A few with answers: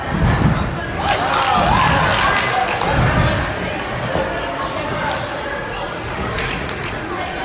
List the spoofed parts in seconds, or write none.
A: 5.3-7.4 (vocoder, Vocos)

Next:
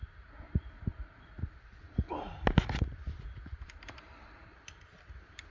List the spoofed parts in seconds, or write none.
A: none